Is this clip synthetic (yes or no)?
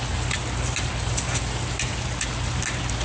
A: no